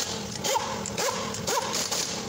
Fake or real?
fake